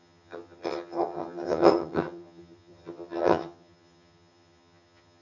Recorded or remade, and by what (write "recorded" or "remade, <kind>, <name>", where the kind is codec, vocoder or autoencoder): remade, vocoder, HiFi-GAN